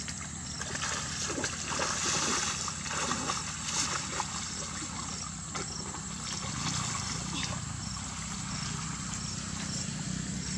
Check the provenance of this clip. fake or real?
real